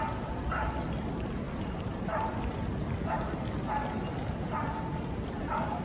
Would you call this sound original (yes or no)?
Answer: yes